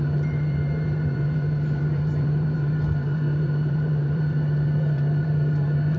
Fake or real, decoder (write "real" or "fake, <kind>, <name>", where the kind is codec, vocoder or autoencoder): fake, vocoder, BigVGAN v2